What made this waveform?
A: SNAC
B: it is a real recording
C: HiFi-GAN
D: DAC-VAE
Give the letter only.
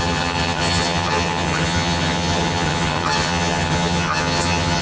C